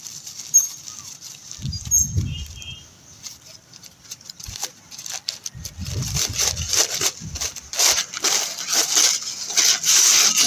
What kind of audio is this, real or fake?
real